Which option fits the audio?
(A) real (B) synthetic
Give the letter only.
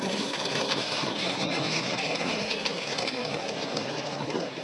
B